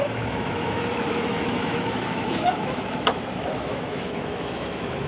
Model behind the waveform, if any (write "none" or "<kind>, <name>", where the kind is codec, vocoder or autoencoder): autoencoder, DAC-VAE